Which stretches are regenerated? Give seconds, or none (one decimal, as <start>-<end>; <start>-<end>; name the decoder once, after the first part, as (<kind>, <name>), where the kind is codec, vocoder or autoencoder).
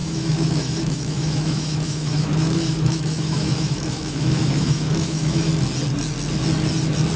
0.0-5.5 (autoencoder, DAC-VAE)